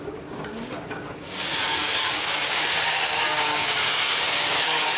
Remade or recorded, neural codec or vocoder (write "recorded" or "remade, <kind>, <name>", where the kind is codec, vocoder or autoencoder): remade, codec, DAC